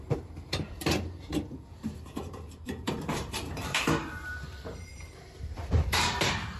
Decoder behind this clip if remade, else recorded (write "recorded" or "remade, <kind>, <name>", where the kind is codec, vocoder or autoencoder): remade, vocoder, BigVGAN v2